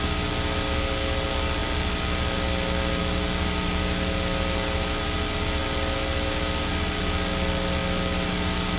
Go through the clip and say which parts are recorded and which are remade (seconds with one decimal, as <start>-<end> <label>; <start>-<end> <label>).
0.0-8.8 recorded